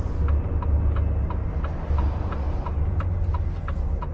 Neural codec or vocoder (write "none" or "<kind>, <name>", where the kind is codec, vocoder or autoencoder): none